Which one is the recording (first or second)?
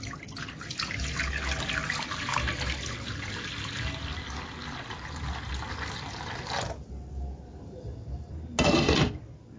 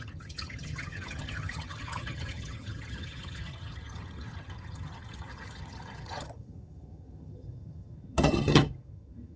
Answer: first